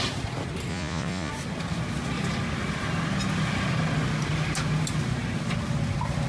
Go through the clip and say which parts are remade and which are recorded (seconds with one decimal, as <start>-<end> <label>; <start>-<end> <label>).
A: 0.0-0.7 recorded; 0.7-1.3 remade; 1.3-6.3 recorded